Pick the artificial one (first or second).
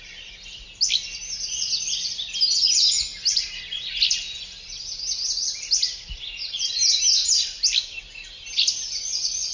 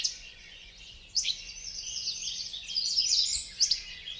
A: second